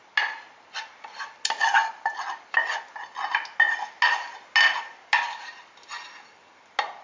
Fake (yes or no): no